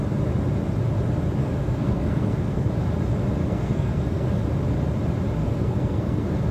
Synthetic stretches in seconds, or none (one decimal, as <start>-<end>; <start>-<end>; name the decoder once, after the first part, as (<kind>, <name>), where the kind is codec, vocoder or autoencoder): 1.4-2.7 (codec, SNAC); 3.4-4.4; 5.4-6.5